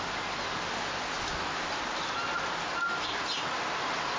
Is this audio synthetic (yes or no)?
no